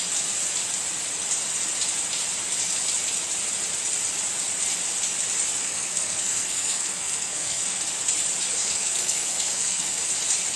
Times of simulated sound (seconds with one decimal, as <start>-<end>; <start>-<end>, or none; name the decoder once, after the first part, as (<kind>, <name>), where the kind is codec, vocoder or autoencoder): 5.6-7.8 (codec, SNAC); 8.5-10.1